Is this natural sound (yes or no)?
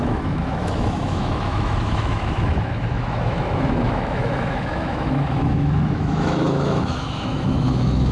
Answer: no